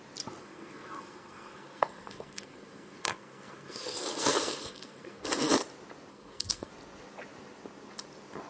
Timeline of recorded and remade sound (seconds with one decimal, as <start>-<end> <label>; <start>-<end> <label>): 0.0-0.4 recorded; 0.4-5.5 remade; 5.5-6.1 recorded; 6.1-6.7 remade; 6.7-8.5 recorded